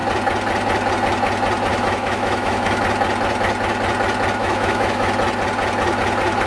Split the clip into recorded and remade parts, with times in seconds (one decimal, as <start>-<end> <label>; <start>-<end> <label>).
0.0-1.7 recorded; 1.7-2.8 remade; 2.8-4.4 recorded; 4.4-5.1 remade; 5.1-6.5 recorded